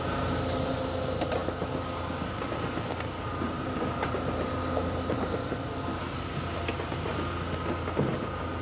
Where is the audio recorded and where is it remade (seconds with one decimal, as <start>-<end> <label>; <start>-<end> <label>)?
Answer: 0.0-8.6 recorded